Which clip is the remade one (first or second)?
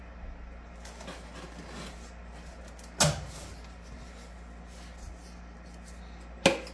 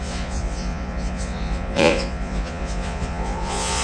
second